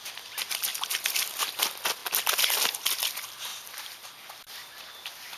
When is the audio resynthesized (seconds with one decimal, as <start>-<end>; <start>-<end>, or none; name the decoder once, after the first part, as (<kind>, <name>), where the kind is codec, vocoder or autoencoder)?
none